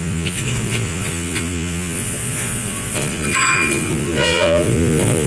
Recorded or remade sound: remade